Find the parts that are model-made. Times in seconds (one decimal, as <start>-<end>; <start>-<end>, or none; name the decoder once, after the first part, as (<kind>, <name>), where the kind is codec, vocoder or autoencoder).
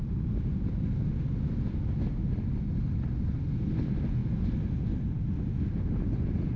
none